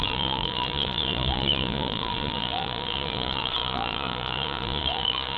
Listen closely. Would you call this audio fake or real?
fake